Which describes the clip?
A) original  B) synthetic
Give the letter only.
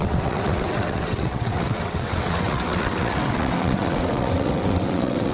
B